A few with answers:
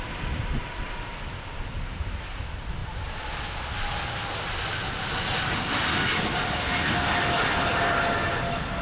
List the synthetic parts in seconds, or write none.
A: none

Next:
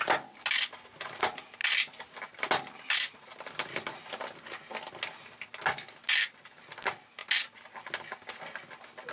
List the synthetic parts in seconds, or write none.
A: none

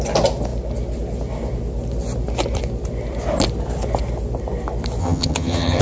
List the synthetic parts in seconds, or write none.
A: 5.0-5.8 (vocoder, HiFi-GAN)

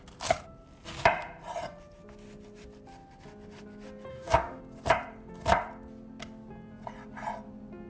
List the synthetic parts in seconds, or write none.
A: 4.1-4.6 (autoencoder, DAC-VAE)